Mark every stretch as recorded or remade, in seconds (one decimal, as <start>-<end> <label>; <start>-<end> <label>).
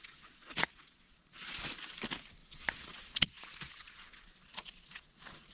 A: 0.0-1.7 remade; 1.7-2.4 recorded; 2.4-5.5 remade